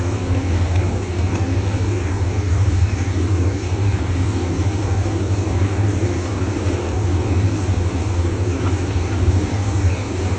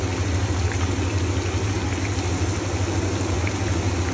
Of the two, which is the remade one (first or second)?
first